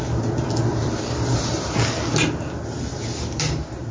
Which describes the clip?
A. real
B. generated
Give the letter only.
A